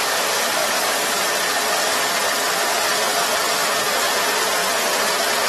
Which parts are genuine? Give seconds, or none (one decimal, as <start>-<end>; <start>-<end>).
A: 0.0-0.6; 2.7-3.1; 3.6-4.6